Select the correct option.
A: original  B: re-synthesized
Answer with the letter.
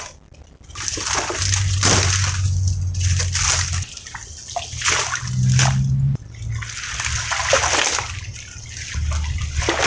A